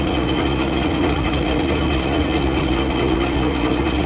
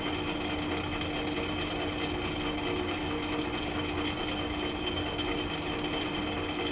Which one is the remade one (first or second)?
first